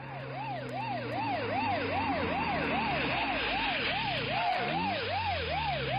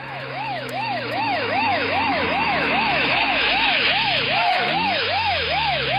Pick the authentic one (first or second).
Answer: first